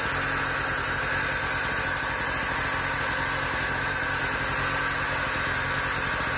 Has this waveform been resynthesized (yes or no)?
no